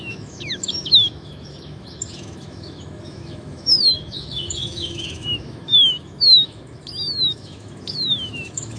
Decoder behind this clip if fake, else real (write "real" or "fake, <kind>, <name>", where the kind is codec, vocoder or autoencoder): fake, autoencoder, DAC-VAE